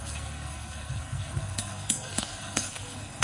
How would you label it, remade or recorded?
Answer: remade